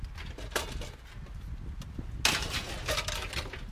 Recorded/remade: recorded